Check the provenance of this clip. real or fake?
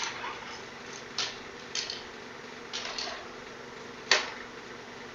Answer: real